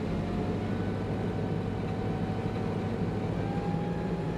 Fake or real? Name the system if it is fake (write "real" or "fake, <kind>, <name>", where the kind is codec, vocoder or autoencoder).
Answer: real